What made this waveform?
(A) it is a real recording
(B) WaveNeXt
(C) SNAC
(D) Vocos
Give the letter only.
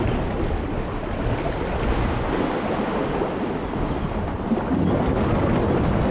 A